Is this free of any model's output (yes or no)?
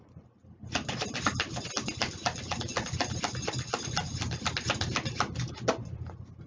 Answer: yes